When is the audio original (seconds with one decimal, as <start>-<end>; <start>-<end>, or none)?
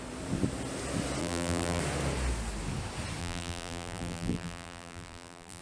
0.0-1.2; 1.8-3.2